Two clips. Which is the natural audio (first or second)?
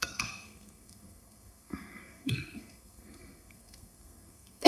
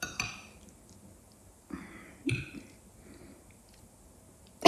second